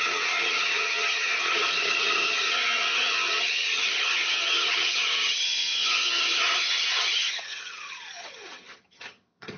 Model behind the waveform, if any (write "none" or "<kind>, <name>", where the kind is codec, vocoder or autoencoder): vocoder, HiFi-GAN